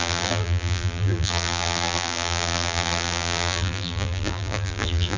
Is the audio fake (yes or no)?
yes